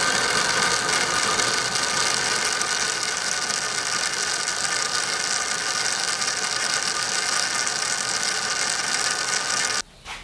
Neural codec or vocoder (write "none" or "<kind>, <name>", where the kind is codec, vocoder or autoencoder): none